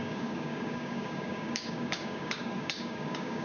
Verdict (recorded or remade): remade